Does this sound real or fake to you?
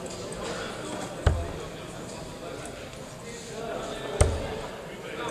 real